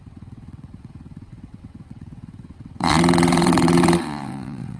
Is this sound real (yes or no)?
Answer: no